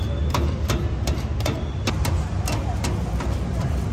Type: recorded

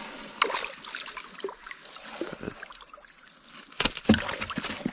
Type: recorded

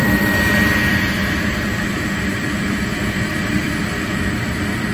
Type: remade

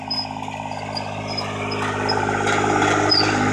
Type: recorded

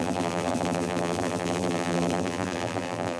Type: remade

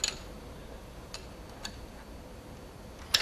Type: recorded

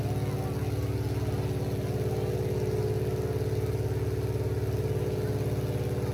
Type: recorded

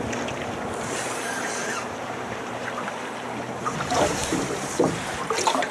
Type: remade